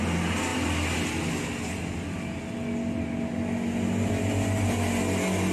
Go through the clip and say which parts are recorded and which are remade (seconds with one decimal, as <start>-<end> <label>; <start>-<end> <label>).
0.0-5.5 recorded